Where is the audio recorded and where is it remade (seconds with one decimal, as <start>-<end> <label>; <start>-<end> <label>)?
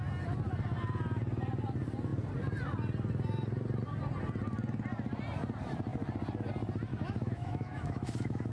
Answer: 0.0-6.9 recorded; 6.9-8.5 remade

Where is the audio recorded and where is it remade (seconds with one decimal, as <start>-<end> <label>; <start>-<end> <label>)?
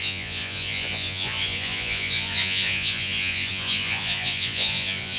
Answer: 0.0-5.2 remade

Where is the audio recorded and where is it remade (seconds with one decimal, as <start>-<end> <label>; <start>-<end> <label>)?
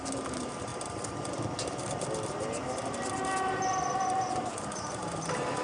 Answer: 0.0-0.7 remade; 0.7-4.1 recorded; 4.1-5.6 remade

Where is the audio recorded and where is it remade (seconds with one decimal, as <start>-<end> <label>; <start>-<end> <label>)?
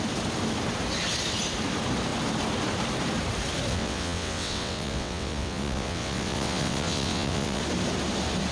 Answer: 0.0-3.7 recorded; 3.7-7.6 remade; 7.6-8.5 recorded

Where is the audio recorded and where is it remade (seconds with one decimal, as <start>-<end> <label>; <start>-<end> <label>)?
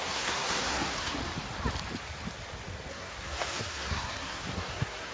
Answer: 0.0-1.2 remade; 1.2-2.9 recorded; 2.9-5.1 remade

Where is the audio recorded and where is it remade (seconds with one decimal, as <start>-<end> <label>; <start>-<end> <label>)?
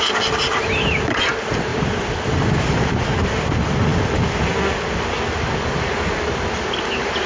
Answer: 0.0-1.7 recorded; 1.7-2.3 remade; 2.3-3.9 recorded; 3.9-5.5 remade; 5.5-7.3 recorded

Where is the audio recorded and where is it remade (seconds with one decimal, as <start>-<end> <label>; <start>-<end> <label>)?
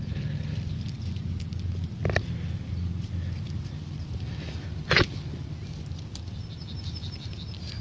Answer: 0.0-7.8 recorded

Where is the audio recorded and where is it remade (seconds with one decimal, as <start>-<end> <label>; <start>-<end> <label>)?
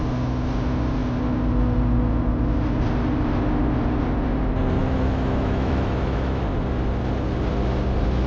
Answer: 0.0-4.8 recorded; 4.8-6.4 remade; 6.4-8.3 recorded